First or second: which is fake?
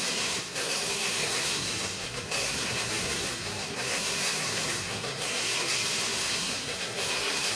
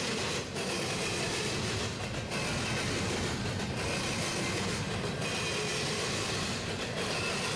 first